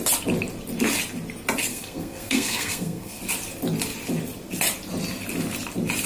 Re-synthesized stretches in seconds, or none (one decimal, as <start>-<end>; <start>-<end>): 1.7-3.2